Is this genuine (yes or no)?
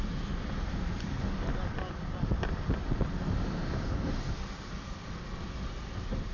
yes